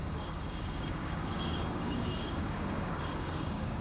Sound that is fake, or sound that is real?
fake